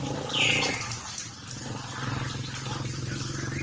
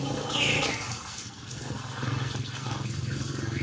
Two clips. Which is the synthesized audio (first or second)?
second